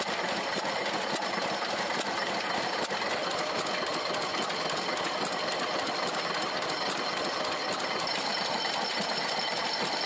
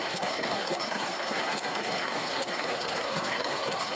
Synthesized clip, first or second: second